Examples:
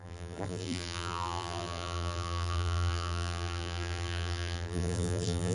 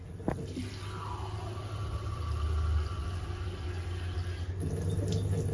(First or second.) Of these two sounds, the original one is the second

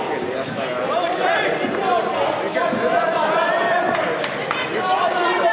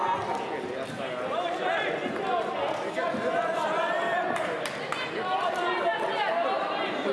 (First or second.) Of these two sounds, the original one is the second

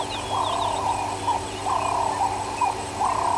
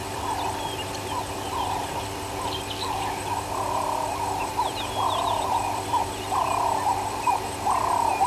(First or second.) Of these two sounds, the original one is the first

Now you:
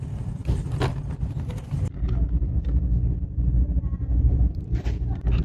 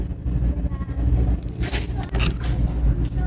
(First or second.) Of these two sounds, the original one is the second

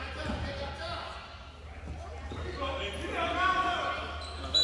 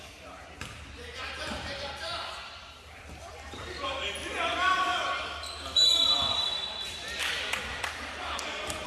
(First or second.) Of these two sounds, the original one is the first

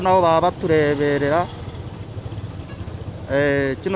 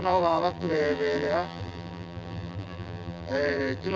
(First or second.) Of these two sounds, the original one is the first